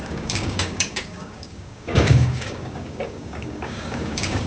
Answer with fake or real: fake